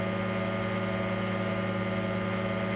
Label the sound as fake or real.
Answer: real